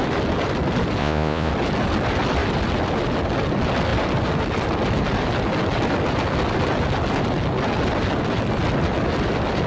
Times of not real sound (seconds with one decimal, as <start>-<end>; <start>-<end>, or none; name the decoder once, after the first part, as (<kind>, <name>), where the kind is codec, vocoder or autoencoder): 1.0-1.5 (vocoder, Vocos)